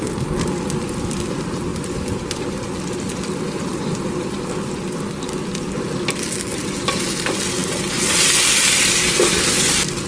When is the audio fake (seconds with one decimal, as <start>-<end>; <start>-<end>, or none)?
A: 1.7-4.7; 6.5-7.1; 7.6-9.1